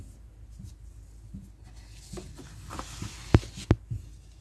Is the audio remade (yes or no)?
no